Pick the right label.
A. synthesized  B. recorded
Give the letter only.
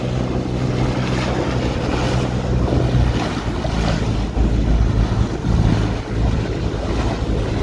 B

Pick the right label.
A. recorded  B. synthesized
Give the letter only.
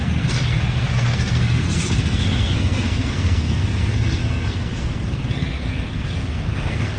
B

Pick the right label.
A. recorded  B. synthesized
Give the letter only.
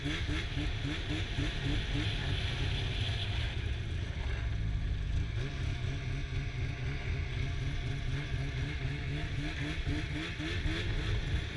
A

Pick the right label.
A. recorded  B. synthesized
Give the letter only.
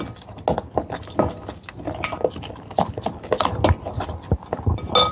A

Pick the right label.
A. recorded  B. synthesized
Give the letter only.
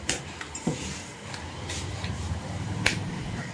B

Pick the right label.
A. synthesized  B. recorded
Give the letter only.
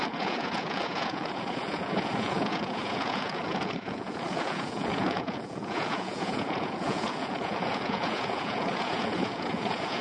A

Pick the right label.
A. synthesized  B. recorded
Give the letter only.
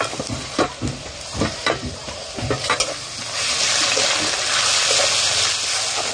B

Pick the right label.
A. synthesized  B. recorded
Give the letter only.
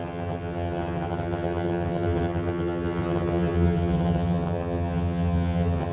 A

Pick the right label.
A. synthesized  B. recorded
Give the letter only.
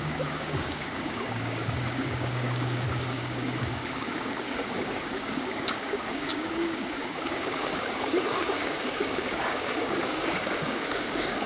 A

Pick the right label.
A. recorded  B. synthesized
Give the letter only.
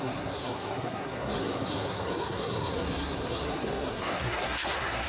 B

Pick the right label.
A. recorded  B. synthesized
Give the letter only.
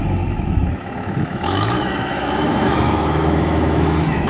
B